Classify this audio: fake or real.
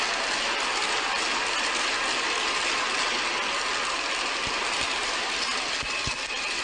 real